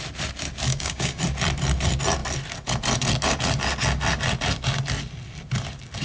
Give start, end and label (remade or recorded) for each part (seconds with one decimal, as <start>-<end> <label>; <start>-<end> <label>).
0.0-0.7 recorded; 0.7-1.2 remade; 1.2-6.0 recorded